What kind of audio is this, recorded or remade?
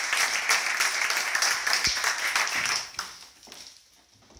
recorded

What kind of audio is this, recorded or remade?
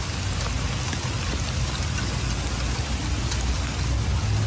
recorded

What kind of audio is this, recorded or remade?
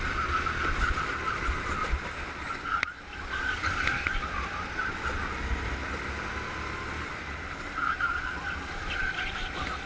recorded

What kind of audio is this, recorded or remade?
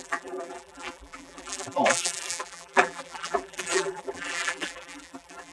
remade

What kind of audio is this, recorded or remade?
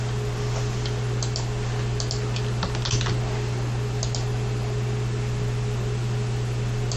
recorded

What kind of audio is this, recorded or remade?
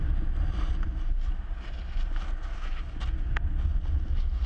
recorded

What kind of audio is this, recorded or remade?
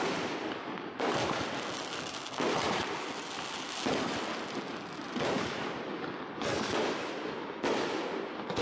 recorded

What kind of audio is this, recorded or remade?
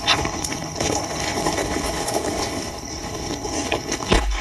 remade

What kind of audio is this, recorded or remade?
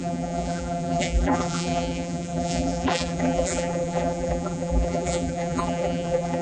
remade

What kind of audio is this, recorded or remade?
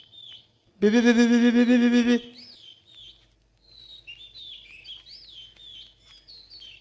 recorded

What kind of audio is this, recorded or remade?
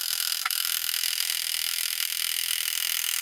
remade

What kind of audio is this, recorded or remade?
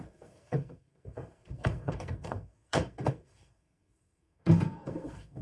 remade